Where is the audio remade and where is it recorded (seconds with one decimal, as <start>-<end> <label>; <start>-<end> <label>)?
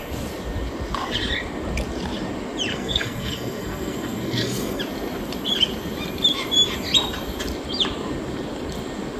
0.0-2.7 recorded; 2.7-4.8 remade; 4.8-9.2 recorded